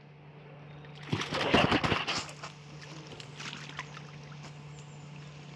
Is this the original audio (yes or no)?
yes